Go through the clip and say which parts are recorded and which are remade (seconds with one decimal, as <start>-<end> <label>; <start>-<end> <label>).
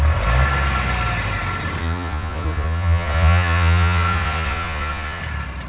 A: 0.0-1.8 recorded; 1.8-5.2 remade; 5.2-5.7 recorded